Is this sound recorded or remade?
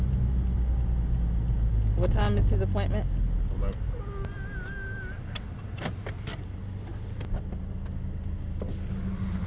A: recorded